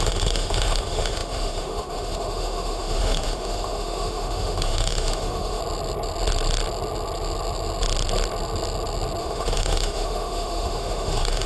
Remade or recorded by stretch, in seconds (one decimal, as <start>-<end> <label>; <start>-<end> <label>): 0.0-5.6 remade; 5.6-9.2 recorded; 9.2-11.5 remade